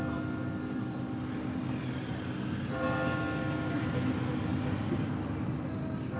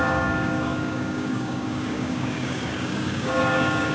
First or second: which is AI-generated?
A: second